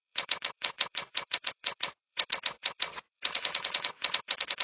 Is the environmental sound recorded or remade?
remade